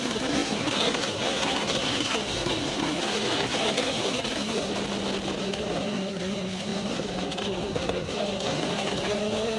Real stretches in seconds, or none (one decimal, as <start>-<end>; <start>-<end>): 4.7-5.4

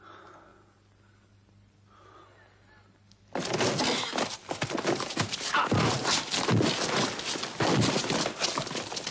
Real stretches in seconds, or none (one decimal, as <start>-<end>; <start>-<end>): 0.0-9.1

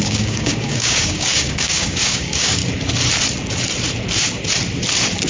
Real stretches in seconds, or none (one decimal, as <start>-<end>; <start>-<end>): 2.6-5.3